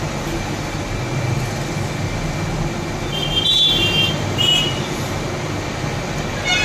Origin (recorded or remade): recorded